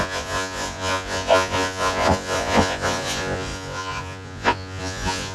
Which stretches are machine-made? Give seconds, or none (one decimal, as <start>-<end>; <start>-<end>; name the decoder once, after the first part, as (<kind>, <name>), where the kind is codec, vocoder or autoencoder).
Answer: 0.0-5.3 (vocoder, Vocos)